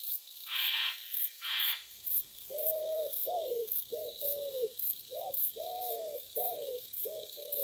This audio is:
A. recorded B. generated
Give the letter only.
B